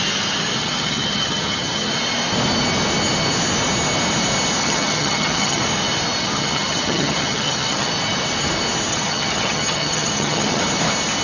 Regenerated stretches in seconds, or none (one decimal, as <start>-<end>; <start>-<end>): 0.6-1.9; 4.6-5.6; 6.2-7.9; 8.9-10.6